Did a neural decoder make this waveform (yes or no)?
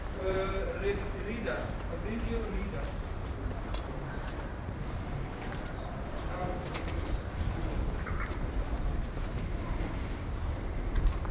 yes